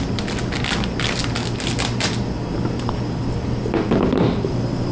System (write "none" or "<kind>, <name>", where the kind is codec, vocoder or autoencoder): none